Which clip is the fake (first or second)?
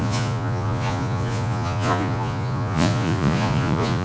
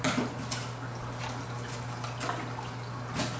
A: first